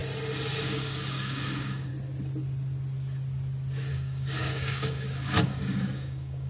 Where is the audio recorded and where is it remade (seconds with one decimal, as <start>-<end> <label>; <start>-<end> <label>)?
0.0-0.6 recorded; 0.6-1.9 remade; 1.9-3.9 recorded; 3.9-6.5 remade